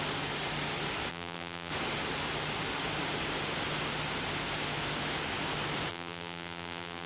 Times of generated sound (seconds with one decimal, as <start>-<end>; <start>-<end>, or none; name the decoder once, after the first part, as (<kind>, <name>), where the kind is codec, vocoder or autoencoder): 1.1-1.7 (vocoder, BigVGAN v2); 5.9-7.1